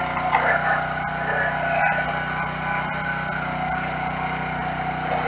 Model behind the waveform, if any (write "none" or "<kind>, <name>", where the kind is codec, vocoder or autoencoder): none